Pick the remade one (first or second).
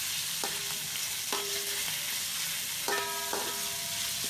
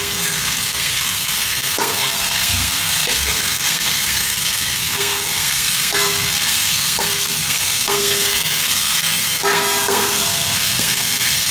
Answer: second